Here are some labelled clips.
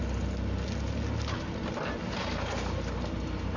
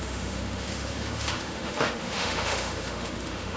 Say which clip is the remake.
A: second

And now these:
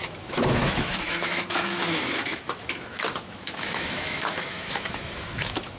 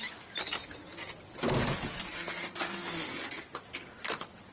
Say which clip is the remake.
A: first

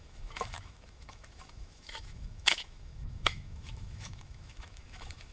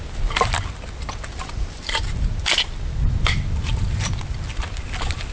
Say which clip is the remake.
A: first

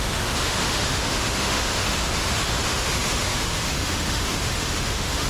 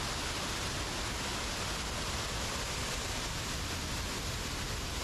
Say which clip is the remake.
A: first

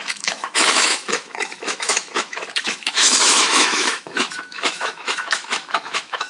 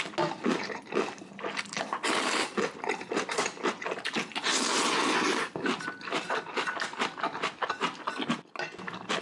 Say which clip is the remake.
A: first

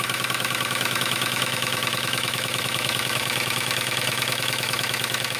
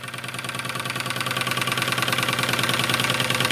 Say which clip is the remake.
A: first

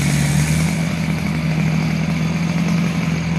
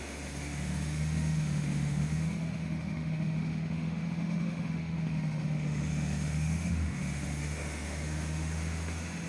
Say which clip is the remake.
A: second